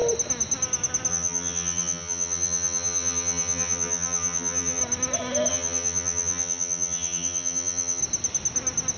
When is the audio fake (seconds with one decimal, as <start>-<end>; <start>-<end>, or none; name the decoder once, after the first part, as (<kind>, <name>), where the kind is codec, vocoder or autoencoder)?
1.1-4.8 (vocoder, HiFi-GAN); 5.5-8.0